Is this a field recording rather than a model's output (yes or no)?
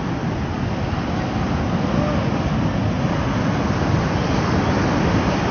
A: yes